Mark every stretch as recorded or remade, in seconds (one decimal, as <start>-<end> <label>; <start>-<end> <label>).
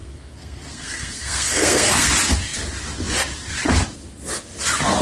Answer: 0.0-2.1 remade; 2.1-5.0 recorded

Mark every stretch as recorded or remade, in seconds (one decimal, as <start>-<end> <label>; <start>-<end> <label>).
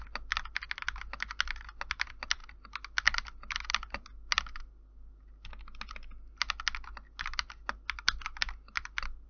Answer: 0.0-9.3 recorded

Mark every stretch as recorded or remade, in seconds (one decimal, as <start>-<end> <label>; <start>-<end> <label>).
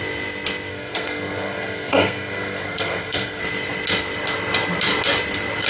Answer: 0.0-0.7 recorded; 0.7-3.4 remade; 3.4-5.7 recorded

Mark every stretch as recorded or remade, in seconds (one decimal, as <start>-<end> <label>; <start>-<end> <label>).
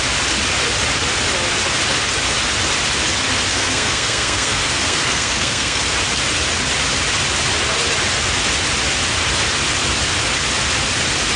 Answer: 0.0-3.5 recorded; 3.5-5.8 remade; 5.8-11.4 recorded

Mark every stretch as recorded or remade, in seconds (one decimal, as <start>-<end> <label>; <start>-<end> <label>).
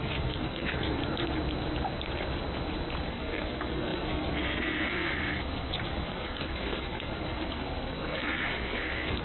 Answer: 0.0-1.0 remade; 1.0-3.1 recorded; 3.1-9.2 remade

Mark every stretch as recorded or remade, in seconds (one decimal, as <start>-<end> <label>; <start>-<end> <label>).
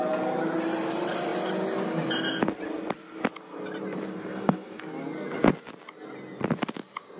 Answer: 0.0-4.1 recorded; 4.1-4.8 remade; 4.8-7.2 recorded